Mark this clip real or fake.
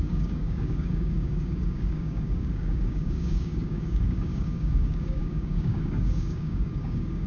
fake